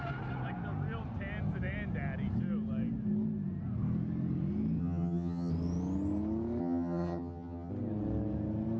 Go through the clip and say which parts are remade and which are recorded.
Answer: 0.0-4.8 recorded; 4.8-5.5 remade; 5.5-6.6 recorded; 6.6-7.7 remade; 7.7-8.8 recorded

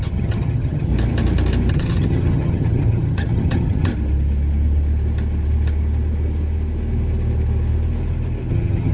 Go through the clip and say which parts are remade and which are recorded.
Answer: 0.0-0.9 remade; 0.9-1.7 recorded; 1.7-3.9 remade; 3.9-8.5 recorded; 8.5-8.9 remade

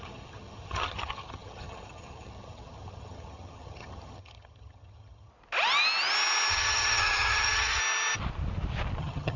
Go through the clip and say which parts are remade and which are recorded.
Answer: 0.0-5.3 remade; 5.3-6.5 recorded; 6.5-7.8 remade; 7.8-9.0 recorded; 9.0-9.4 remade

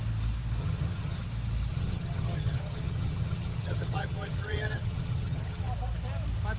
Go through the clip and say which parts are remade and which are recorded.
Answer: 0.0-0.6 recorded; 0.6-1.2 remade; 1.2-1.7 recorded; 1.7-5.7 remade; 5.7-6.6 recorded

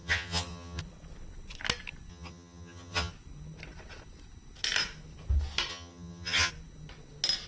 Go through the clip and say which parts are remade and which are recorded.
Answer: 0.0-0.8 remade; 0.8-2.1 recorded; 2.1-3.1 remade; 3.1-5.7 recorded; 5.7-6.5 remade; 6.5-7.5 recorded

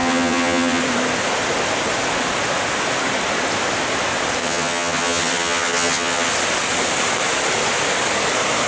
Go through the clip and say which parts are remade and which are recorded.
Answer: 0.0-0.8 remade; 0.8-4.4 recorded; 4.4-6.3 remade; 6.3-8.7 recorded

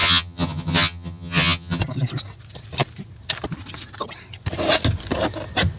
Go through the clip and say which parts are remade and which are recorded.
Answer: 0.0-1.8 remade; 1.8-5.8 recorded

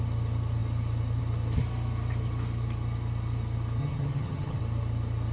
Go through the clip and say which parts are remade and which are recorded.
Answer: 0.0-3.8 recorded; 3.8-4.6 remade; 4.6-5.3 recorded